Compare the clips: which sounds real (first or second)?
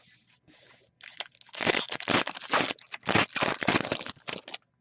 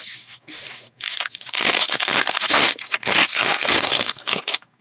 first